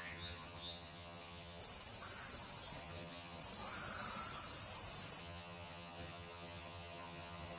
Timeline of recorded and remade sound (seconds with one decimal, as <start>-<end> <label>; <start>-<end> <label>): 0.0-1.6 remade; 1.6-2.8 recorded; 2.8-3.4 remade; 3.4-5.2 recorded; 5.2-7.6 remade